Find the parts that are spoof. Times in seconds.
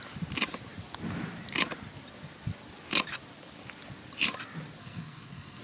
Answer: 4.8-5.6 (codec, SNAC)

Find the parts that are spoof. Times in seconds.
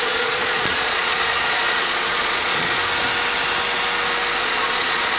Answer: 0.0-2.8 (vocoder, Vocos); 4.4-5.2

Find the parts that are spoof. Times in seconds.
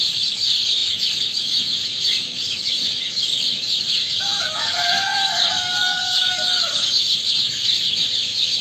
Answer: 0.0-8.6 (codec, DAC)